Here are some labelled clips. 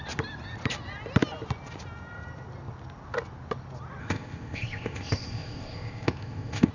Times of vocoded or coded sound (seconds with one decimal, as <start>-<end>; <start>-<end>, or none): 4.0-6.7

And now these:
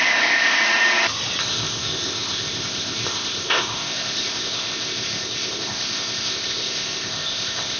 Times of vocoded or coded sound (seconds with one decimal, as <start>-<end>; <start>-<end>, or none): 0.0-0.6; 1.4-7.8

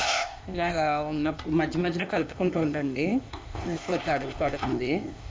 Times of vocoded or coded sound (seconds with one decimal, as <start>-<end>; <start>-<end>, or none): 0.0-1.4; 1.8-5.3

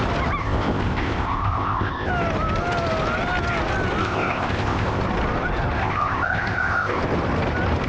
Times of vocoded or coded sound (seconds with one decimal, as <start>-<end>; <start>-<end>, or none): 0.4-2.1; 4.0-5.0; 5.8-7.0

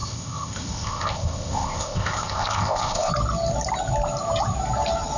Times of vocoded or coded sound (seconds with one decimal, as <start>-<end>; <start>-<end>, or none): 0.0-3.1

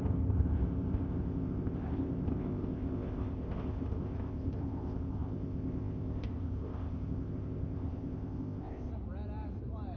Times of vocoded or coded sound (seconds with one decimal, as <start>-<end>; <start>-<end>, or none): 0.0-8.9